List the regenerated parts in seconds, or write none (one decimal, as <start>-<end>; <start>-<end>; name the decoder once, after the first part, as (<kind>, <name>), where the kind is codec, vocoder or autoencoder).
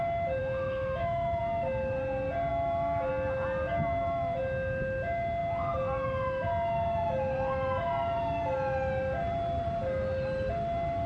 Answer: 0.4-1.4 (autoencoder, DAC-VAE); 2.5-3.1